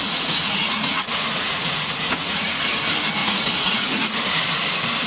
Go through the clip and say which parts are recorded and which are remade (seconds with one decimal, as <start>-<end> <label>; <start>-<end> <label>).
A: 0.0-2.6 remade; 2.6-3.2 recorded; 3.2-4.2 remade; 4.2-5.1 recorded